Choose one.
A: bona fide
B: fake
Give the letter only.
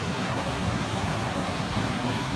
B